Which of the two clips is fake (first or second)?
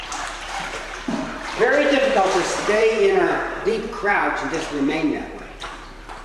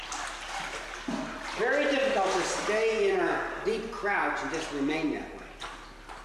first